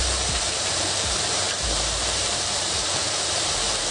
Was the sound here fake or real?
fake